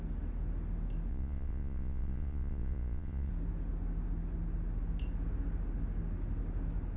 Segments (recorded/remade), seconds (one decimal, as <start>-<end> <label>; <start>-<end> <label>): 0.0-1.1 recorded; 1.1-3.3 remade; 3.3-7.0 recorded